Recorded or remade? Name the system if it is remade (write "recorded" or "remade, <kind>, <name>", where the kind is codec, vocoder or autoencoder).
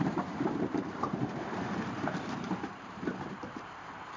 remade, vocoder, BigVGAN v2